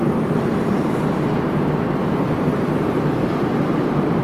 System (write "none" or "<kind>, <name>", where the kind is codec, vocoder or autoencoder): vocoder, BigVGAN v2